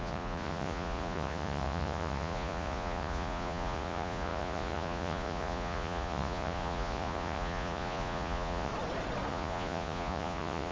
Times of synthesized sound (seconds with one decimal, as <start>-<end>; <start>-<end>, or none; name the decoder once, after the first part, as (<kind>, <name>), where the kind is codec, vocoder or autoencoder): 0.0-8.7 (vocoder, Vocos); 9.3-10.7